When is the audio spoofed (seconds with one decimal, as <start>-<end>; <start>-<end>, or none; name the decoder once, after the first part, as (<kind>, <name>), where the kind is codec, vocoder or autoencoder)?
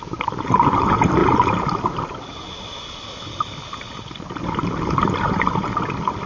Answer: none